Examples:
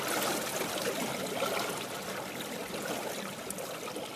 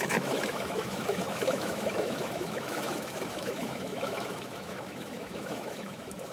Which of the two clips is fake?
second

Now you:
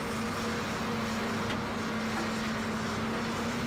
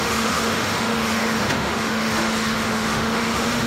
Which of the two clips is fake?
second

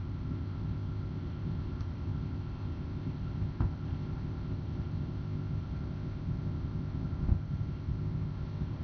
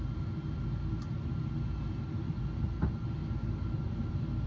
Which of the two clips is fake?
first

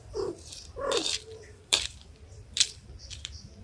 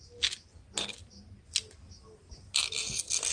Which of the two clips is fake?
first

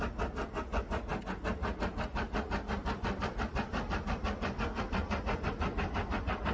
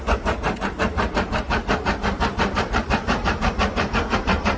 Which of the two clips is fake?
second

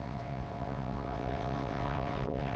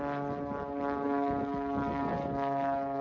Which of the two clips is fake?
first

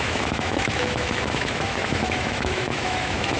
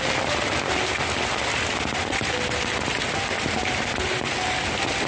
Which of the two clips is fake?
first